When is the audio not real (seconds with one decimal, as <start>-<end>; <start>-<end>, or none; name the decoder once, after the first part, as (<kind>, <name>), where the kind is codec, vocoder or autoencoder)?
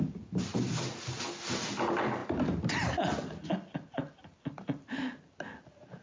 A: none